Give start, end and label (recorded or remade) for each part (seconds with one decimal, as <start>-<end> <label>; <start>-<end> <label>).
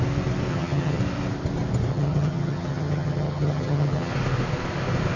0.0-0.5 recorded; 0.5-1.0 remade; 1.0-1.9 recorded; 1.9-4.1 remade; 4.1-5.2 recorded